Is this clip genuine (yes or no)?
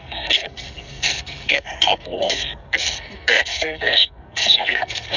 no